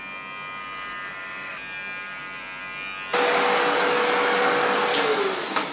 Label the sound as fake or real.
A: real